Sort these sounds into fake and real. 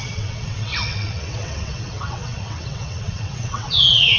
fake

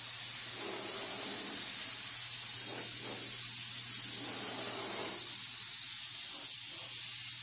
real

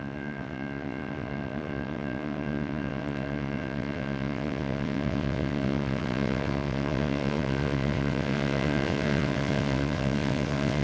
fake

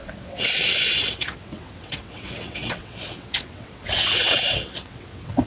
fake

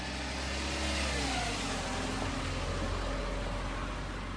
real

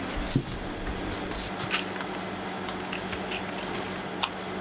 real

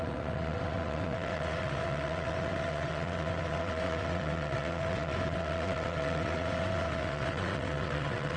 fake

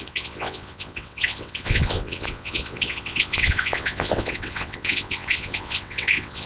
fake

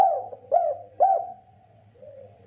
fake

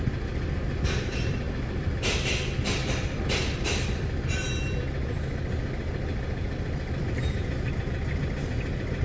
real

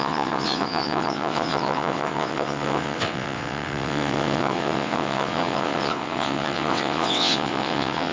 fake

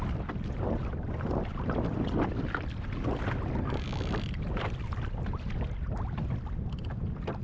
real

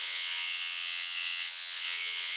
fake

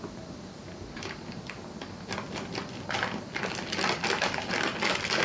real